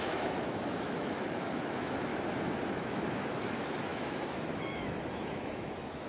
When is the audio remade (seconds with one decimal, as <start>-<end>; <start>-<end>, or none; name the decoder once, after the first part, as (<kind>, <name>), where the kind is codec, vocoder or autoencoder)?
0.0-2.1 (autoencoder, DAC-VAE); 2.7-6.1